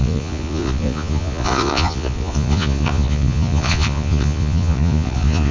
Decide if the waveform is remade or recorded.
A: remade